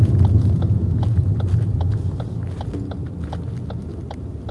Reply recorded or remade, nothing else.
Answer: recorded